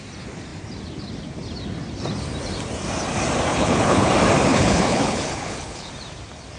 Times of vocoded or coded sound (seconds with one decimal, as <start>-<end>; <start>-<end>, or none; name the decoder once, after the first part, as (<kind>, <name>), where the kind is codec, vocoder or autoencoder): 3.5-4.1 (codec, HILCodec); 4.5-5.9